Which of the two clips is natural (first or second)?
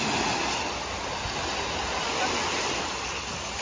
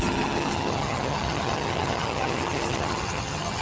first